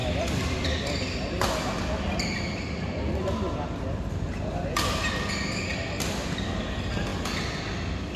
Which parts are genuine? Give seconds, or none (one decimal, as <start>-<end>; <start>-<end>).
1.2-8.2